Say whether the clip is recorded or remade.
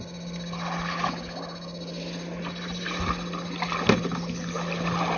recorded